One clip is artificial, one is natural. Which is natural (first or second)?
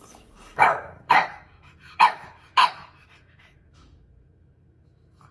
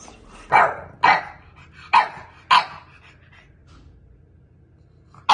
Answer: second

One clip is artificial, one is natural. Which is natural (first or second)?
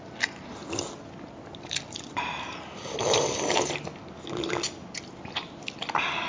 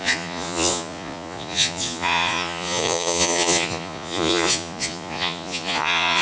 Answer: first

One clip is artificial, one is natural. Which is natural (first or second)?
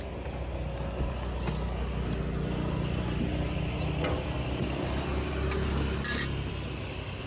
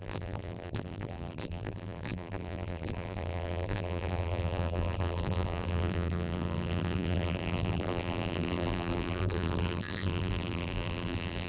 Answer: first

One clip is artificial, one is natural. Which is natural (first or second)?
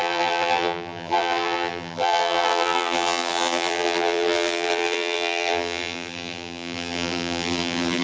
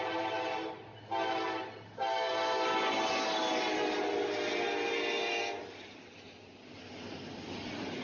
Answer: second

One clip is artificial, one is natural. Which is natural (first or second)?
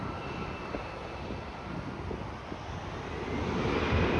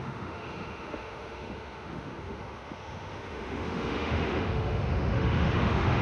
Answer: first